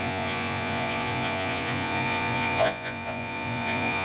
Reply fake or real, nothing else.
fake